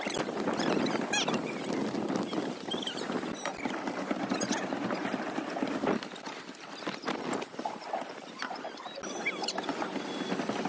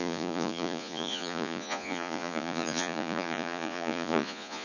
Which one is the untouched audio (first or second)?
first